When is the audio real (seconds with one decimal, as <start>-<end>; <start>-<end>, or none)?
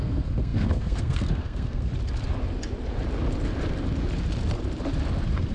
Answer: 1.9-5.5